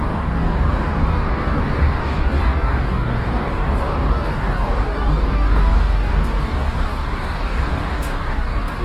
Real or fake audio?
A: fake